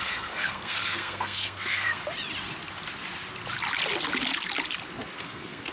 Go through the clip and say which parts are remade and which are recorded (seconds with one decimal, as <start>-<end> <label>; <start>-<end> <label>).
0.0-2.0 remade; 2.0-5.2 recorded; 5.2-5.7 remade